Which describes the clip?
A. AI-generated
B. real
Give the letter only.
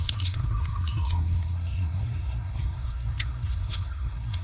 A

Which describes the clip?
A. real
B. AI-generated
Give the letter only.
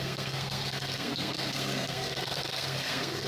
B